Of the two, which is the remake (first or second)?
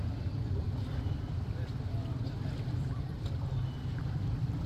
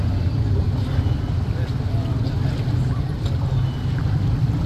first